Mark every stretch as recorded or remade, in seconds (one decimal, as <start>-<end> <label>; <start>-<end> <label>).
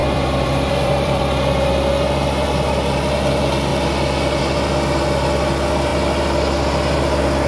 0.0-1.2 remade; 1.2-7.5 recorded